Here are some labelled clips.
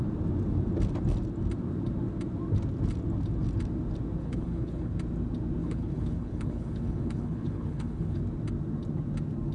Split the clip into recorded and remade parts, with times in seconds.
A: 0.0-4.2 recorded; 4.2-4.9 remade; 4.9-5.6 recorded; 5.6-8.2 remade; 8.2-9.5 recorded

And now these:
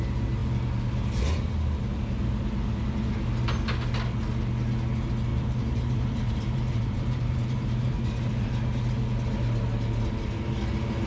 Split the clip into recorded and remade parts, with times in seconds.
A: 0.0-5.3 recorded; 5.3-8.5 remade; 8.5-11.1 recorded

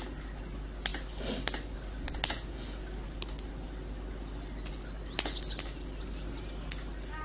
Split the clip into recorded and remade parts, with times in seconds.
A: 0.0-7.2 recorded

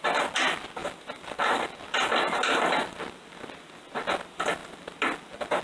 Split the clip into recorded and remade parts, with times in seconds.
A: 0.0-5.6 recorded

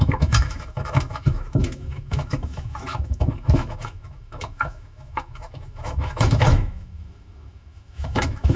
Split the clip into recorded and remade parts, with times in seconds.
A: 0.0-8.6 remade

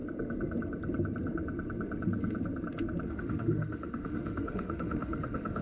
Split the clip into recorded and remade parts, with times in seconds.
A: 0.0-3.1 recorded; 3.1-5.6 remade

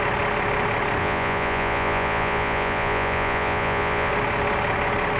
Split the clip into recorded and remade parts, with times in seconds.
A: 0.0-1.0 recorded; 1.0-4.1 remade; 4.1-5.2 recorded